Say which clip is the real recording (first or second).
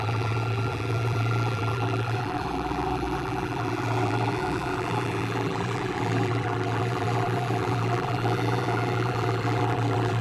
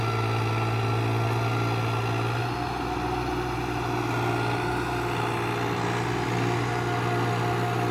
second